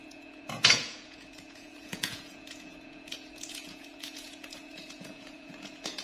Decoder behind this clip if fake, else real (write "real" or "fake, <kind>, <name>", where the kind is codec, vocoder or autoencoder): fake, vocoder, Vocos